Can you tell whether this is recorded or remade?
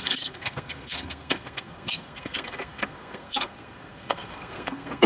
remade